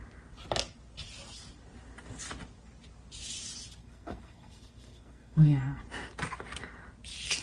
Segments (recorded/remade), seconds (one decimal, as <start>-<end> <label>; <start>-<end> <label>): 0.0-3.8 recorded; 3.8-5.8 remade; 5.8-7.4 recorded